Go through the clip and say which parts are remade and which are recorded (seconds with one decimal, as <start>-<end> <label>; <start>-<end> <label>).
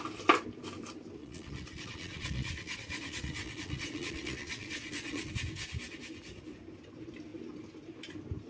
0.0-1.2 recorded; 1.2-5.3 remade; 5.3-8.5 recorded